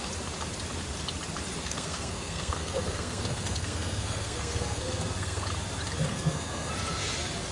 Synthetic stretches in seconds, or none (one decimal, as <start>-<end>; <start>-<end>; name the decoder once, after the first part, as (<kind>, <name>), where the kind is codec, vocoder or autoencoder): 1.6-5.4 (codec, SNAC); 6.1-6.7